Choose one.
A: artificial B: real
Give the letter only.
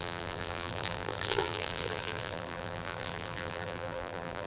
A